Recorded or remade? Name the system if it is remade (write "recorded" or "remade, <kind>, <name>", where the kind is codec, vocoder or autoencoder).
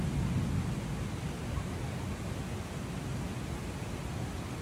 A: recorded